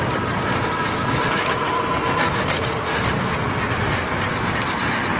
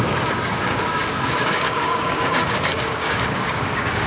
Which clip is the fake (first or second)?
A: second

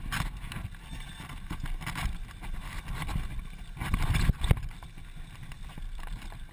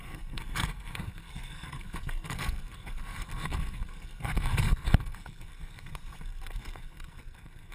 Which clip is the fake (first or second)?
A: second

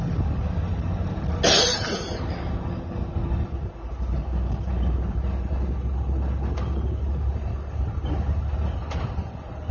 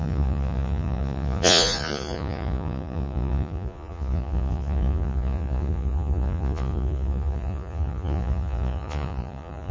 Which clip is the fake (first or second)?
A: second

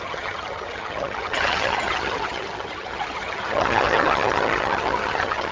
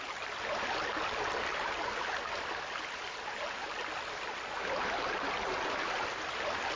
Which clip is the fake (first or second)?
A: first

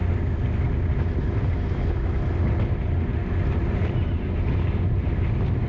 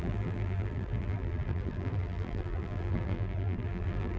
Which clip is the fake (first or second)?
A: second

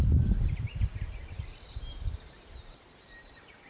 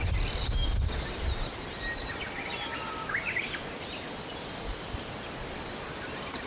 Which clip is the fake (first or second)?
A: first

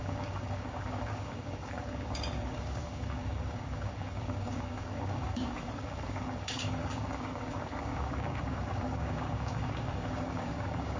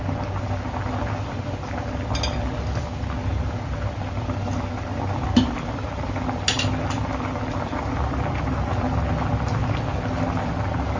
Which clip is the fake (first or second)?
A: first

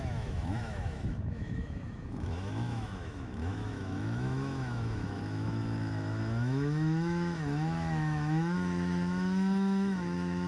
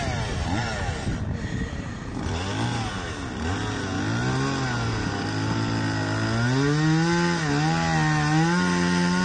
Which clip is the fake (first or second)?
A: first